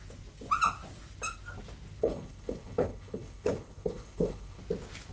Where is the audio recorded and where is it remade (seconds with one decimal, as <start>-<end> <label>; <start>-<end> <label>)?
0.0-2.0 recorded; 2.0-4.6 remade; 4.6-5.1 recorded